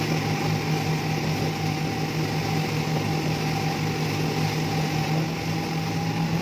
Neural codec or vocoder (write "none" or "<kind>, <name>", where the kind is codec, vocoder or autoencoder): none